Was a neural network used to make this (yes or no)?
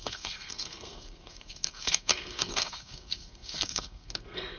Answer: yes